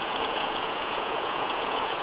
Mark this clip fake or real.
fake